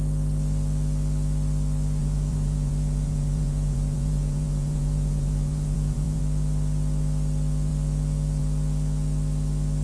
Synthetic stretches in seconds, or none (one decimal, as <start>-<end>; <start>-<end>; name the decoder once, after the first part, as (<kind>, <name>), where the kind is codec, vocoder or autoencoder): 2.0-6.2 (vocoder, Vocos)